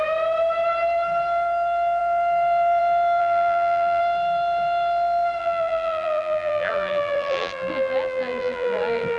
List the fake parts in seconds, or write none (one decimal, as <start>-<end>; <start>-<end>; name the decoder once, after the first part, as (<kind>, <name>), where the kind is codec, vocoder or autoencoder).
3.2-4.0 (vocoder, BigVGAN v2); 5.4-9.2